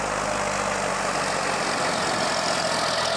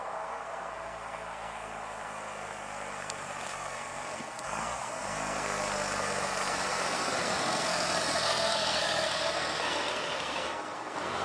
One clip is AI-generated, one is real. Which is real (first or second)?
first